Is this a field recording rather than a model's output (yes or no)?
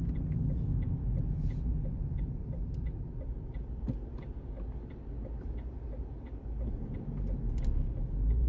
yes